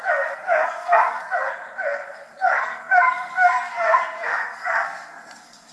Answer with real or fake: fake